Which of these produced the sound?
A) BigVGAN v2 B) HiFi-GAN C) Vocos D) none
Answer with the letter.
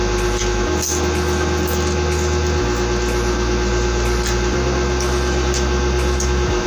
D